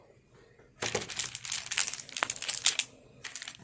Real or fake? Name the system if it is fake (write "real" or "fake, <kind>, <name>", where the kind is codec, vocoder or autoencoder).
real